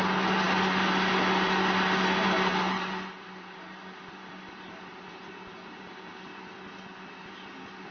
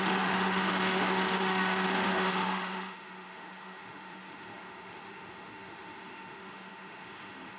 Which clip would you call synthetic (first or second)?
second